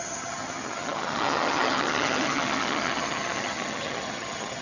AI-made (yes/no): yes